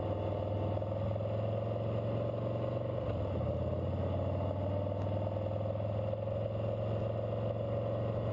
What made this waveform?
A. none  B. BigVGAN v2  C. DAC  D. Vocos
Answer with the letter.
A